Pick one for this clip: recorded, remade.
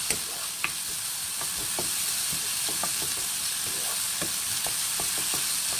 recorded